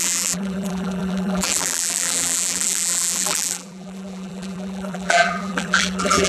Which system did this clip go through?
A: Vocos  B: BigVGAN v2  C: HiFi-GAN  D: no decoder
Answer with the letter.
B